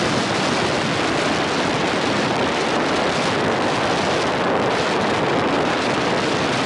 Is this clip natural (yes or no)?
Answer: yes